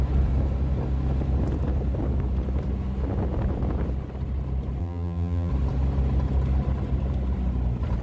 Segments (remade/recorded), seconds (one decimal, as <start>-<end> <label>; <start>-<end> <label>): 0.0-4.8 recorded; 4.8-5.5 remade; 5.5-8.0 recorded